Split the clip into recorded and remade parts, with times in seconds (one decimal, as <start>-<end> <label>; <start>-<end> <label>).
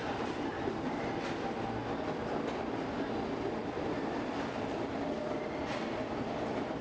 0.0-1.1 remade; 1.1-3.6 recorded; 3.6-4.8 remade; 4.8-6.8 recorded